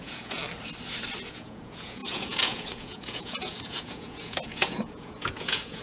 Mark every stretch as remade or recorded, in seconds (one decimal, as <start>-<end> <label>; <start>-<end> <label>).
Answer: 0.0-0.4 remade; 0.4-1.3 recorded; 1.3-5.8 remade